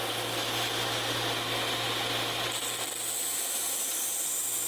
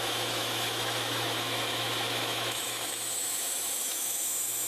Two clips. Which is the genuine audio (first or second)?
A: first